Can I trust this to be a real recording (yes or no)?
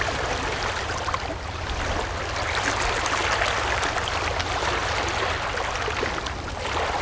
yes